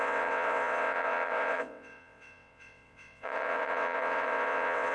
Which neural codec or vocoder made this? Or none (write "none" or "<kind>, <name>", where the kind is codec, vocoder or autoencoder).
vocoder, WaveNeXt